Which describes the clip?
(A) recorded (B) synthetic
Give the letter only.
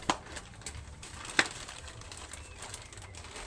A